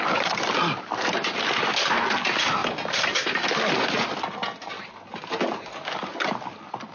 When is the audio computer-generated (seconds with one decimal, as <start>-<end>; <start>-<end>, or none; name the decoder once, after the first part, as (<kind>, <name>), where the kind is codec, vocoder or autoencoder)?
none